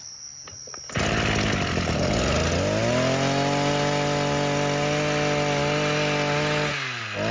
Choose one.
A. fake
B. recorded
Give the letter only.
B